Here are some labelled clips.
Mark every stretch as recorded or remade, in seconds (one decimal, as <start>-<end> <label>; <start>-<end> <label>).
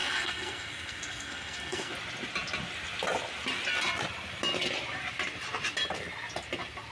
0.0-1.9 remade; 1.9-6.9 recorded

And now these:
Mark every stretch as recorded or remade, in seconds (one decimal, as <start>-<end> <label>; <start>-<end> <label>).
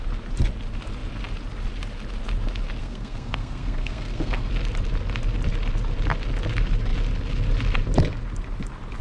0.0-2.8 recorded; 2.8-4.5 remade; 4.5-9.0 recorded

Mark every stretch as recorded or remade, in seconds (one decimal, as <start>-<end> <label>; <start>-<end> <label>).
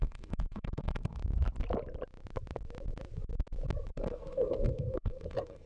0.0-1.2 remade; 1.2-3.9 recorded; 3.9-5.7 remade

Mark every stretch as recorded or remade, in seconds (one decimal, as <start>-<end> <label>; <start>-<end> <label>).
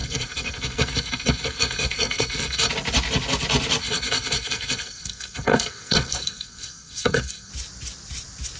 0.0-2.7 remade; 2.7-3.8 recorded; 3.8-7.5 remade; 7.5-8.6 recorded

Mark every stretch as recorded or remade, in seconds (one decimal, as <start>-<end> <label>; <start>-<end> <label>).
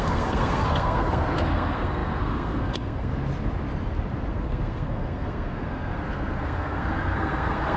0.0-3.1 remade; 3.1-4.3 recorded; 4.3-7.8 remade